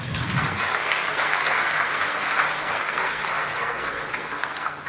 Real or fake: fake